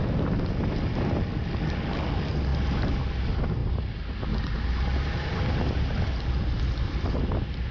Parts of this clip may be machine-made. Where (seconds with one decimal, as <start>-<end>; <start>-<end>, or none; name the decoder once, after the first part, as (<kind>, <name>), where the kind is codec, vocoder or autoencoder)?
none